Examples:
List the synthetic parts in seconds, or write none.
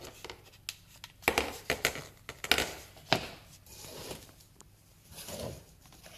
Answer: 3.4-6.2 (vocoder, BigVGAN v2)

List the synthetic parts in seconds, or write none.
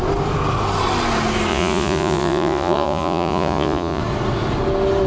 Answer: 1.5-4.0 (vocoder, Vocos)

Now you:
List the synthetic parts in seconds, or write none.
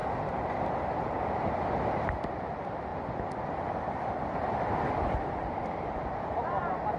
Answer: none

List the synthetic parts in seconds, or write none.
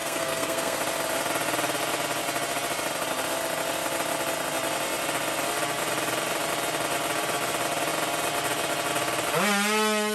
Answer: 0.0-0.8 (codec, SNAC)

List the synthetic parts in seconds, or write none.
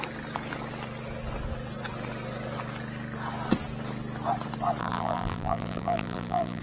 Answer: 4.8-6.6 (vocoder, BigVGAN v2)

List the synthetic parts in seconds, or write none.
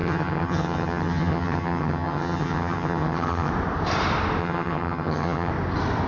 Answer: 0.0-3.5 (vocoder, HiFi-GAN); 4.4-5.5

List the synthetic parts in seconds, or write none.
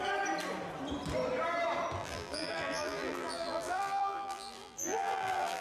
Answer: 2.0-5.6 (vocoder, BigVGAN v2)